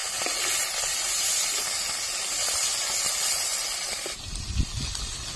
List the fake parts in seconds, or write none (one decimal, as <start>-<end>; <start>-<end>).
none

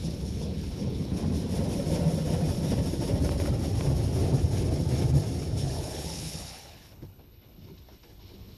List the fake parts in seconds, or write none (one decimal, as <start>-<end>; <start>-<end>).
0.0-1.2; 5.6-8.6

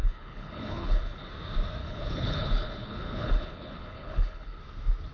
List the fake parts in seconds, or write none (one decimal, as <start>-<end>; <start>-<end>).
0.0-1.3; 1.8-4.6

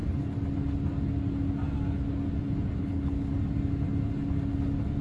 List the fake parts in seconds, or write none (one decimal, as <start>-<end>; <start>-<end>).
2.8-3.3

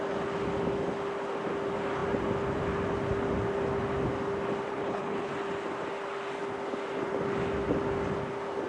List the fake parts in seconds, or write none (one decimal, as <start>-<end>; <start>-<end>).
4.7-5.3

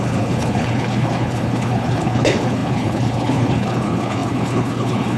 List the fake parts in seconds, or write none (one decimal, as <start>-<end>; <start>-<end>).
0.0-5.2

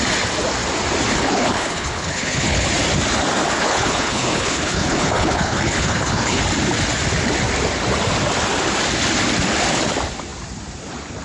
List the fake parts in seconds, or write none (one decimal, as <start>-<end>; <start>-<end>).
1.1-2.7; 3.6-6.4

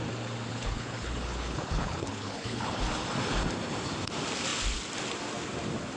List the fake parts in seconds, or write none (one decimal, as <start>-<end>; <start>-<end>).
0.5-2.8